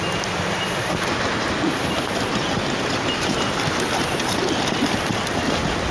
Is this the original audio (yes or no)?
yes